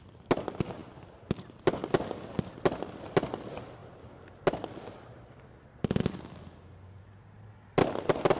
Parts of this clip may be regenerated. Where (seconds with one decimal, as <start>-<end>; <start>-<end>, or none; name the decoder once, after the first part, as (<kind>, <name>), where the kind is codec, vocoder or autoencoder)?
none